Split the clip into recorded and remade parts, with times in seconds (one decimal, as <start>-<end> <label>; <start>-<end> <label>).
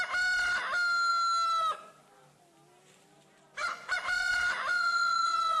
0.0-3.6 recorded; 3.6-5.6 remade